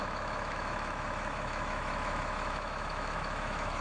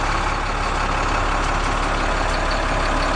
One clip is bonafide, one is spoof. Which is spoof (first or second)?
first